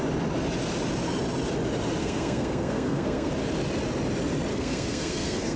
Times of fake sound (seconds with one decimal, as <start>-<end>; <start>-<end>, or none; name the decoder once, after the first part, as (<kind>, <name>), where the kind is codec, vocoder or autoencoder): 2.0-3.3 (codec, SNAC); 4.5-5.6